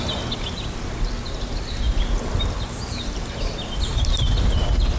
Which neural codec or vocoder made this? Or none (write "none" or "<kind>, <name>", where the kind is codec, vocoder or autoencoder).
none